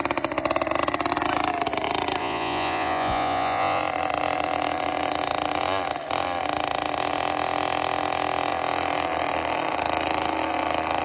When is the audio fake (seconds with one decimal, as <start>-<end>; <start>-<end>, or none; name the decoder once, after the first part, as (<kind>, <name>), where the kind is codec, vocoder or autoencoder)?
2.2-3.8 (vocoder, Vocos)